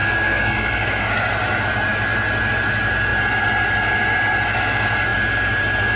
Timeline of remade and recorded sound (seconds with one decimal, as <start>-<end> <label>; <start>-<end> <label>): 0.0-1.1 remade; 1.1-6.0 recorded

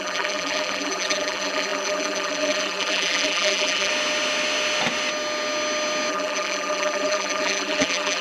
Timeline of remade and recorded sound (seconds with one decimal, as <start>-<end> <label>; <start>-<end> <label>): 0.0-3.9 remade; 3.9-6.1 recorded; 6.1-8.2 remade

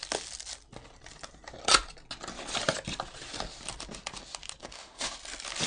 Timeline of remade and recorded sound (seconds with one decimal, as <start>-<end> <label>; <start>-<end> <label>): 0.0-4.6 recorded; 4.6-5.1 remade; 5.1-5.7 recorded